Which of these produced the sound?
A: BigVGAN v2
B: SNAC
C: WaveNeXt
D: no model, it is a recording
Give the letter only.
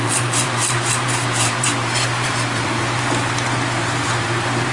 A